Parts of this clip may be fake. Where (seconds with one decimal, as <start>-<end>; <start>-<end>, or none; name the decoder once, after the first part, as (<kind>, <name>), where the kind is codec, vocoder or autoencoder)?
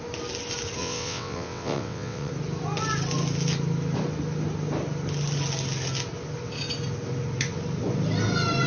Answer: 0.8-2.3 (vocoder, WaveNeXt)